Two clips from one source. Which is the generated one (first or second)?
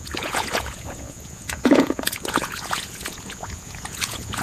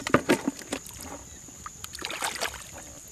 first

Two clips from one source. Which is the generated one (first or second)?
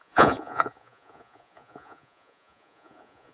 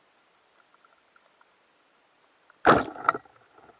first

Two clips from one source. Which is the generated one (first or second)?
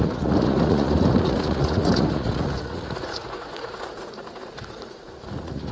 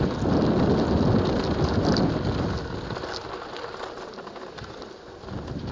first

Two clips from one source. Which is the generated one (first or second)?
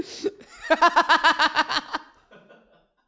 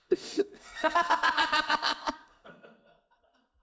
second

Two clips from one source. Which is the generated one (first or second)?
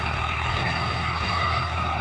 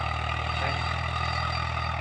first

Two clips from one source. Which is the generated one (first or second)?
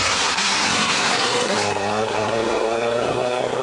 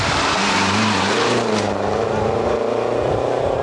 first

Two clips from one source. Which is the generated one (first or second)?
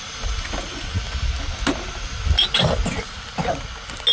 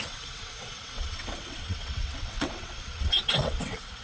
second